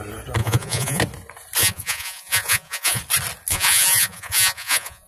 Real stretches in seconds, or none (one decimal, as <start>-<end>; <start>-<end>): 0.0-0.4; 1.0-1.6; 3.0-3.5